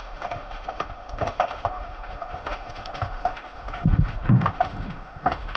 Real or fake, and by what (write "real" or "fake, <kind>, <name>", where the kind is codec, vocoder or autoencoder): fake, autoencoder, DAC-VAE